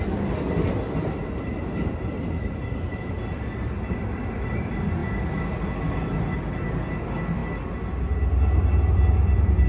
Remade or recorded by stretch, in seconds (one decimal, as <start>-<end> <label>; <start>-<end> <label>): 0.0-9.7 recorded